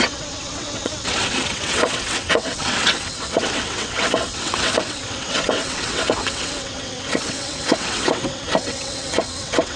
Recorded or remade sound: remade